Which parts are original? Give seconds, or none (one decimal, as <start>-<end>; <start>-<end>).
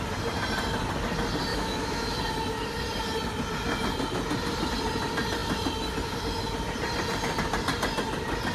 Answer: 0.0-1.5; 2.2-8.5